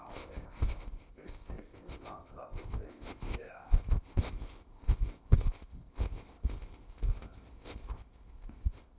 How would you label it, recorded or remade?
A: remade